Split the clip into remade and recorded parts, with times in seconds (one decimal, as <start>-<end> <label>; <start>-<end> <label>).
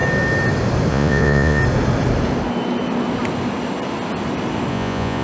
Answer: 0.0-0.9 recorded; 0.9-1.6 remade; 1.6-4.7 recorded; 4.7-5.2 remade